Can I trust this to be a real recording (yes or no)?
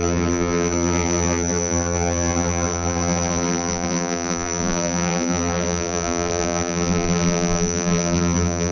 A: no